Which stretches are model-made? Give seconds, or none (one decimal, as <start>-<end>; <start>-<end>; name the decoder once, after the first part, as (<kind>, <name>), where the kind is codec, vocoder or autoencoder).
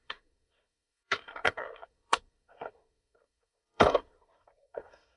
0.0-5.2 (codec, SNAC)